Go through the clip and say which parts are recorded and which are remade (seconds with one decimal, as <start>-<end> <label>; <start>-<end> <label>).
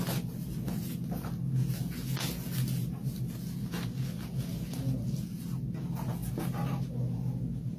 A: 0.0-7.8 recorded